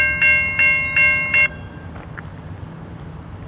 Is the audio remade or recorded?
recorded